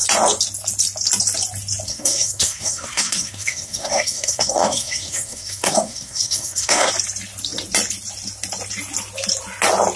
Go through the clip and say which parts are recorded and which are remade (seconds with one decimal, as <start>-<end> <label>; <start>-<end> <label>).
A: 0.0-1.9 recorded; 1.9-6.9 remade; 6.9-10.0 recorded